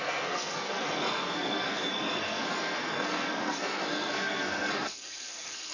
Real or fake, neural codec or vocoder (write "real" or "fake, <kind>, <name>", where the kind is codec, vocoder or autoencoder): fake, codec, SNAC